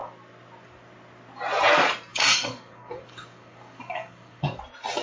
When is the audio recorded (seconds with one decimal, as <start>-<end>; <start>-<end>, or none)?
0.0-2.1; 4.6-5.0